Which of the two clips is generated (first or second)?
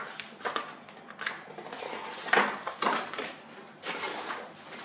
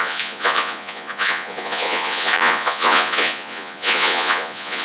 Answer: second